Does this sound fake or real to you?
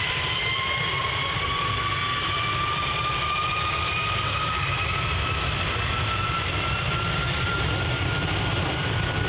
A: fake